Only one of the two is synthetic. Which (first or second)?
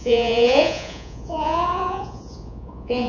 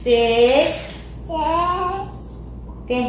first